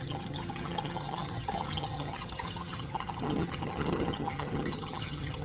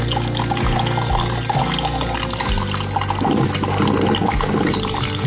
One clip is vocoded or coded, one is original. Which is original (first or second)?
second